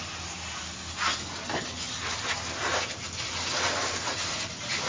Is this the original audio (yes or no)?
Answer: yes